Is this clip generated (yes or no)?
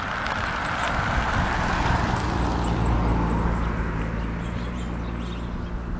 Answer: no